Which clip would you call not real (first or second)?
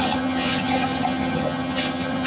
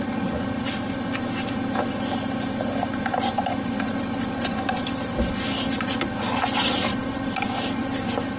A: first